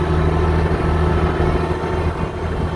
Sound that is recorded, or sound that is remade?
recorded